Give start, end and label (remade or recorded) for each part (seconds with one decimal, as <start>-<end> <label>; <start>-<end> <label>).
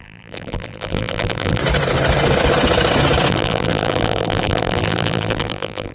0.0-1.6 remade; 1.6-3.3 recorded; 3.3-5.9 remade